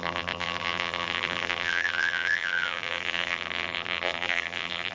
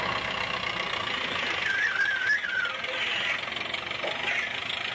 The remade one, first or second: first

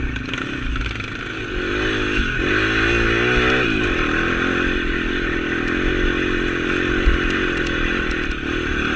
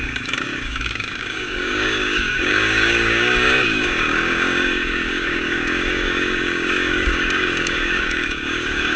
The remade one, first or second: second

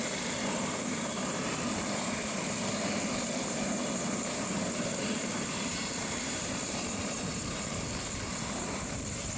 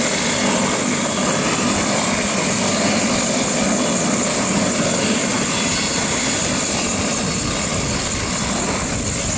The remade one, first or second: first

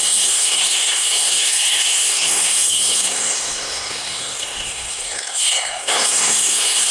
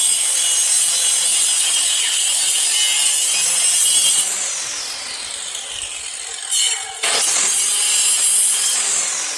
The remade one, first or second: first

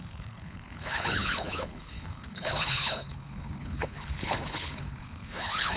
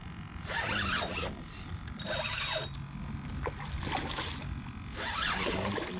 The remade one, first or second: first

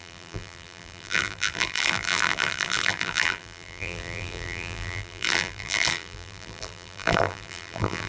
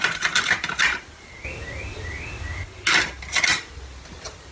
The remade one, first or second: first